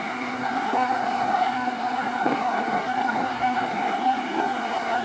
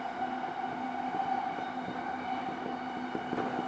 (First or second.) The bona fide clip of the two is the second